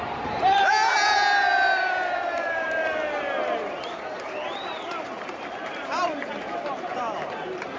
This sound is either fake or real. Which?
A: fake